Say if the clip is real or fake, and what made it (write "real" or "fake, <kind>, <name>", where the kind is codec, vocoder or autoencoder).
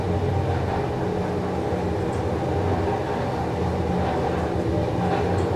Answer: real